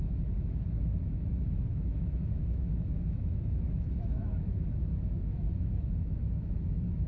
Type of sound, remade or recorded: remade